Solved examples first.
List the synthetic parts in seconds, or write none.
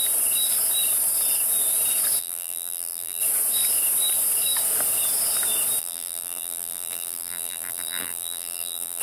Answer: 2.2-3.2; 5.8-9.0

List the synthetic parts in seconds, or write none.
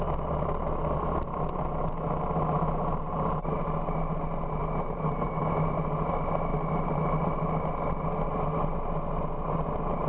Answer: 4.6-5.7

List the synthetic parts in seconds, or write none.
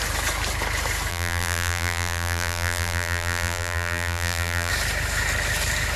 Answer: 1.1-4.7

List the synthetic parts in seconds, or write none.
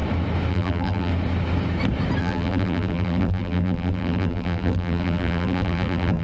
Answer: 0.5-1.1; 2.2-6.2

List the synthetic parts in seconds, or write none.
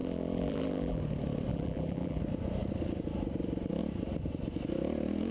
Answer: 0.0-1.0; 1.5-2.2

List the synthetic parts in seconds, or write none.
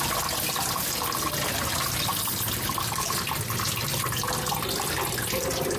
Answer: 2.1-3.3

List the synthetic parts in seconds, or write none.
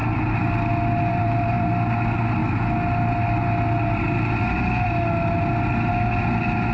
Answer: 1.1-1.7